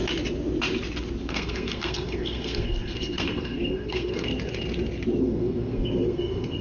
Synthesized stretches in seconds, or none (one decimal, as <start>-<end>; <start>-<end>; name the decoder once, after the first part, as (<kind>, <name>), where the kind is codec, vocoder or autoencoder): 1.3-4.3 (codec, SNAC); 5.2-6.6